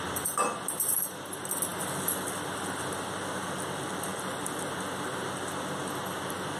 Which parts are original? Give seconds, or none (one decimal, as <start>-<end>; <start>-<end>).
0.0-1.7; 2.6-4.1; 5.2-6.6